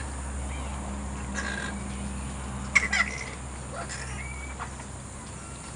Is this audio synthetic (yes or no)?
no